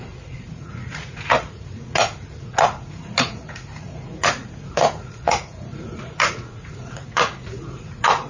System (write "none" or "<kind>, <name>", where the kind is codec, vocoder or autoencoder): vocoder, Vocos